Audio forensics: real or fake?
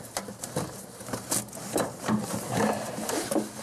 real